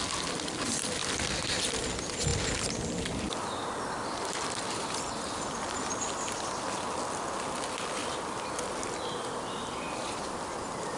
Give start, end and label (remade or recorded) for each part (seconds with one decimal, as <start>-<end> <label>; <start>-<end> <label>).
0.0-1.0 recorded; 1.0-1.6 remade; 1.6-2.3 recorded; 2.3-4.7 remade; 4.7-8.0 recorded; 8.0-10.4 remade; 10.4-11.0 recorded